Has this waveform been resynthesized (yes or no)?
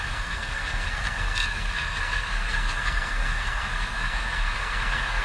yes